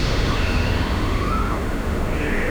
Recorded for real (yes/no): no